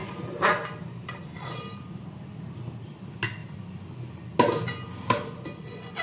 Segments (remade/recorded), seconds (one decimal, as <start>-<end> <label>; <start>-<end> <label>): 0.0-1.6 remade; 1.6-6.0 recorded